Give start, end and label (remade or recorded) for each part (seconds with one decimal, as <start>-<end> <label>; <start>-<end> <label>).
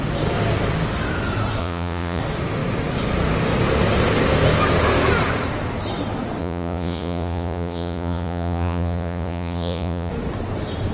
0.0-1.6 recorded; 1.6-2.2 remade; 2.2-6.4 recorded; 6.4-10.1 remade; 10.1-10.9 recorded